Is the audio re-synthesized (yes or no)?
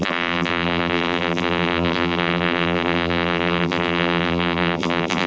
yes